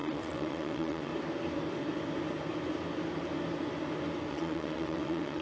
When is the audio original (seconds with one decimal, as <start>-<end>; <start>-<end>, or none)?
1.1-4.3